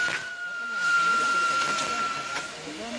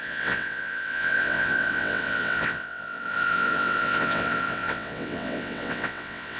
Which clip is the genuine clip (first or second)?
first